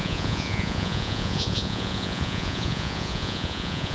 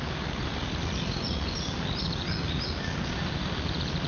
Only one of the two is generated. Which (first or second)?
first